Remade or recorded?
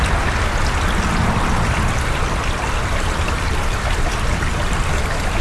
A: recorded